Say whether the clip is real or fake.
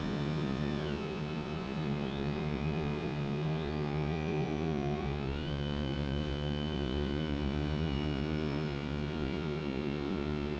fake